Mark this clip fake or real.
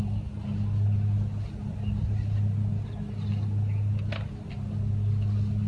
real